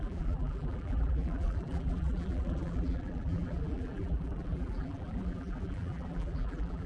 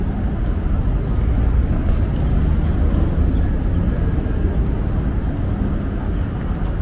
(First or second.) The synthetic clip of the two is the first